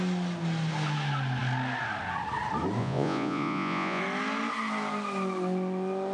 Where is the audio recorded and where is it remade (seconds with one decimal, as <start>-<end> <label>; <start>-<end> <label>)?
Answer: 0.0-2.8 recorded; 2.8-4.0 remade; 4.0-6.1 recorded